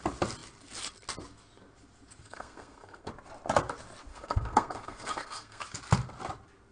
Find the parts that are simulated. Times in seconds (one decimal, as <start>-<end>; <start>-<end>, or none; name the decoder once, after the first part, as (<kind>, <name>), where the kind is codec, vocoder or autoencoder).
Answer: 2.2-3.1 (codec, SNAC); 4.1-5.6